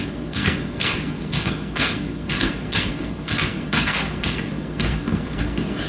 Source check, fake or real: fake